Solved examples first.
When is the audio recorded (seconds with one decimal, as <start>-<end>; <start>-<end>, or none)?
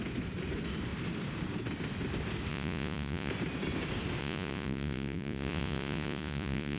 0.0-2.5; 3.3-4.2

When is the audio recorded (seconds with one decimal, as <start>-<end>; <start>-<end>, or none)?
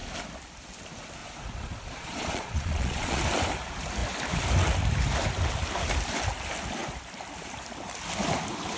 0.0-1.2; 3.2-8.8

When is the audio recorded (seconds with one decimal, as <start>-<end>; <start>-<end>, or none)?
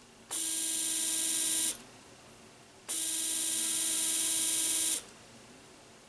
0.0-6.1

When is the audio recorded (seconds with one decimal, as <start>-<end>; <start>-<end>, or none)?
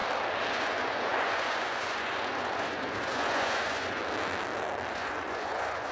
0.0-0.5; 4.0-4.9